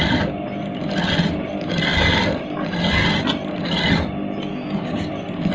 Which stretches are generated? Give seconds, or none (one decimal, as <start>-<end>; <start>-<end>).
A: 4.5-5.1